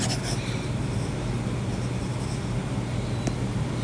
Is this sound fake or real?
real